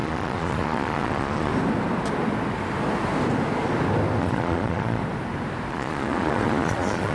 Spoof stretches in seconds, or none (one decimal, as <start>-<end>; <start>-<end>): 0.0-1.5; 4.2-5.0; 5.7-7.1